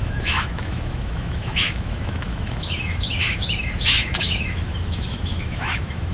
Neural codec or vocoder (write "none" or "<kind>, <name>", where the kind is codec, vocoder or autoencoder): autoencoder, DAC-VAE